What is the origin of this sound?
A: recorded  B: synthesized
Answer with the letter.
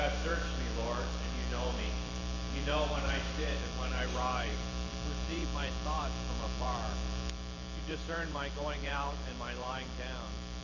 B